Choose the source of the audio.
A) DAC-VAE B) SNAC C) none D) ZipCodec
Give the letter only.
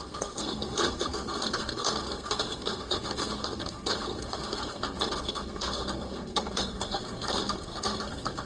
B